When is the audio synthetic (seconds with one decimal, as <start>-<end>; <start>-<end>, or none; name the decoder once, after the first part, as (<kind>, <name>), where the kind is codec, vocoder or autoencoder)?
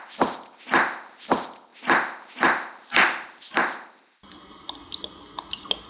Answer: none